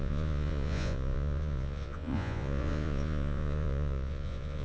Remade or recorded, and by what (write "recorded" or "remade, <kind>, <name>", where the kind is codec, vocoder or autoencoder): remade, vocoder, Vocos